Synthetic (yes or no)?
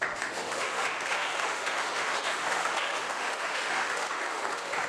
yes